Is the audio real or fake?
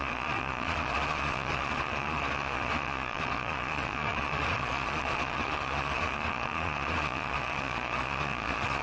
fake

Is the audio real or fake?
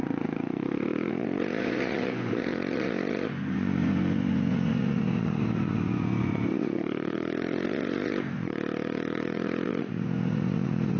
fake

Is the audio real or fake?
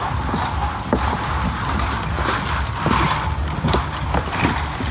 real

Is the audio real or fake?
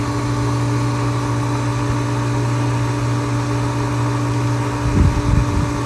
real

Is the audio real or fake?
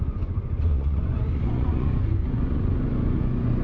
fake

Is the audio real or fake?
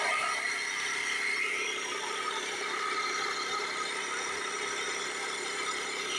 real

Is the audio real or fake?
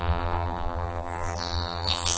fake